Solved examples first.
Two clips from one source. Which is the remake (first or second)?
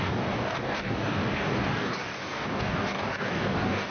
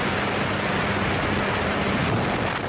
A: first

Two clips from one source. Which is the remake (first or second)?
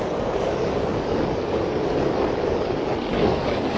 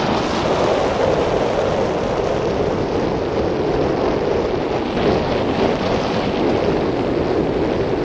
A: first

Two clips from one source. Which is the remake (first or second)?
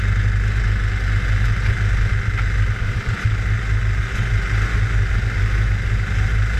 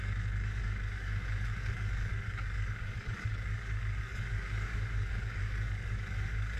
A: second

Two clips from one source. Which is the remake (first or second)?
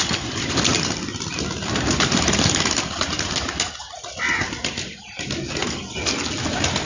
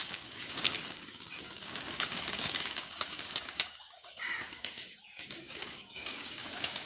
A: second